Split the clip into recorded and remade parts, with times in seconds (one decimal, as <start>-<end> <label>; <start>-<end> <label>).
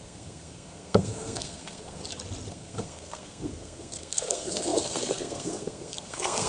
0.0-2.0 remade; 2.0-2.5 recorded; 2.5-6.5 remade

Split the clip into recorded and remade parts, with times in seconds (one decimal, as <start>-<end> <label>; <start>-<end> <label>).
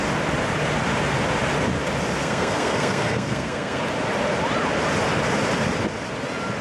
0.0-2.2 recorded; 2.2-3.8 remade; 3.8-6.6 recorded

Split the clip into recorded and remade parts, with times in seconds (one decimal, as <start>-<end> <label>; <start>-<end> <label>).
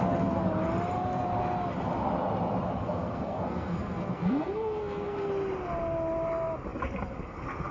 0.0-2.8 recorded; 2.8-5.3 remade; 5.3-7.7 recorded